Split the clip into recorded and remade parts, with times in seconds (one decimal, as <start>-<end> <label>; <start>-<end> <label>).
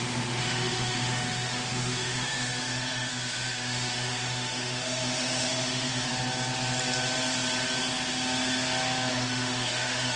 0.0-6.1 remade; 6.1-9.1 recorded; 9.1-10.2 remade